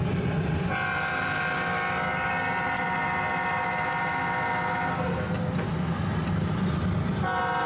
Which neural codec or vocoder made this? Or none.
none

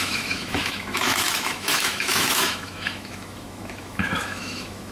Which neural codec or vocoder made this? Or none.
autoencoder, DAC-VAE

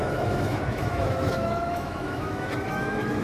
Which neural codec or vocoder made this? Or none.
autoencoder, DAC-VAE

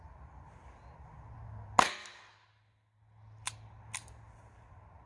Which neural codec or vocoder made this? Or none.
none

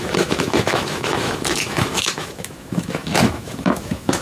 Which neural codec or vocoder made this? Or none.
autoencoder, DAC-VAE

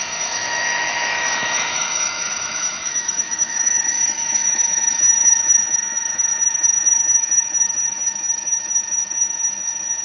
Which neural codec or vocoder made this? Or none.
autoencoder, DAC-VAE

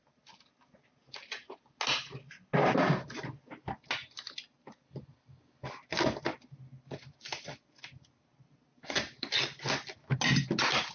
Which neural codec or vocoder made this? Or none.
none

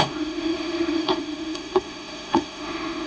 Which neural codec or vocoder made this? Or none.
autoencoder, DAC-VAE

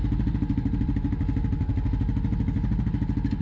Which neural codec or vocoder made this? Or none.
none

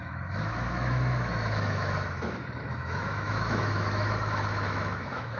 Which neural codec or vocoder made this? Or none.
autoencoder, DAC-VAE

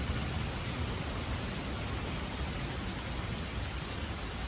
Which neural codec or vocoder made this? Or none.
none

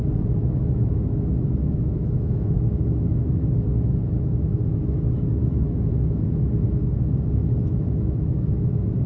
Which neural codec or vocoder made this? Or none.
autoencoder, DAC-VAE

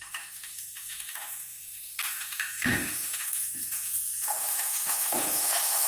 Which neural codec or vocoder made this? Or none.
autoencoder, DAC-VAE